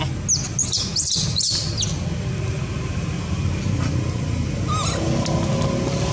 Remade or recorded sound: recorded